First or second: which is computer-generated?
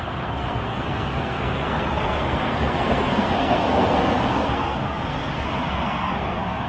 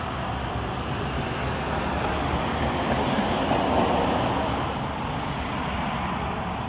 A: first